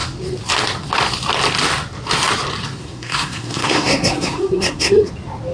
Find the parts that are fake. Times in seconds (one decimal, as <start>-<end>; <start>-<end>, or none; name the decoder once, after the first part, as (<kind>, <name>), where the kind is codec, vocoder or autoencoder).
2.8-5.1 (codec, SNAC)

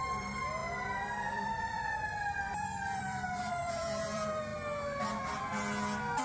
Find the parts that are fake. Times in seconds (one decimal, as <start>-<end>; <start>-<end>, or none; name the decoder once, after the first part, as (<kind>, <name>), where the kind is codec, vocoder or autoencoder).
0.0-4.5 (vocoder, BigVGAN v2)

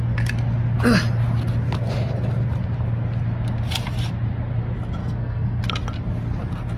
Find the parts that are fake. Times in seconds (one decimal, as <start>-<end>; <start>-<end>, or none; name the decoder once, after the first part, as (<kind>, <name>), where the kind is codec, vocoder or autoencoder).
5.0-5.6 (codec, SNAC)

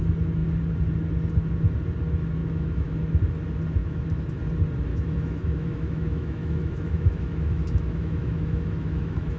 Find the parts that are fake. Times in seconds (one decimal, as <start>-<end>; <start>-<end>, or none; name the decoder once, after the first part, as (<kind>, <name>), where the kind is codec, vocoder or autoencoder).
2.4-3.0 (autoencoder, DAC-VAE); 3.8-4.4; 4.9-9.4

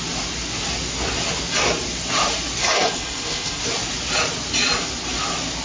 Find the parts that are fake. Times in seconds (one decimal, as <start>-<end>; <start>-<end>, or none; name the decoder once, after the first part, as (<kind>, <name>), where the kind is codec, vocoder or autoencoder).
2.6-3.6 (codec, HILCodec)

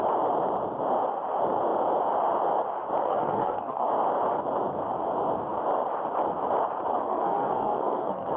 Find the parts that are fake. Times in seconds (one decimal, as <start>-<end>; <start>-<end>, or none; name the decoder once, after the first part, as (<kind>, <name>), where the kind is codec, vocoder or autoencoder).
3.0-3.9 (codec, SNAC); 6.9-8.4

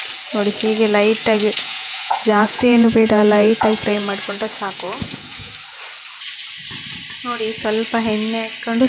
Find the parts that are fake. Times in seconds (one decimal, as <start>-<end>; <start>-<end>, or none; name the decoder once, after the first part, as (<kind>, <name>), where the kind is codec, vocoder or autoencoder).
1.2-5.5 (vocoder, Vocos)

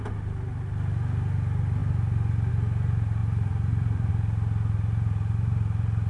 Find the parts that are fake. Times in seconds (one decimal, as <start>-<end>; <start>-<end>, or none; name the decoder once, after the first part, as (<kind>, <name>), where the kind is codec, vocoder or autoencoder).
3.2-4.1 (vocoder, BigVGAN v2)